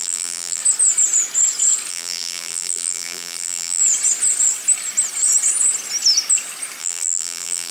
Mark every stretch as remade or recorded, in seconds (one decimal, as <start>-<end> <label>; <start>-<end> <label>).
0.0-0.6 remade; 0.6-1.9 recorded; 1.9-3.8 remade; 3.8-6.8 recorded; 6.8-7.7 remade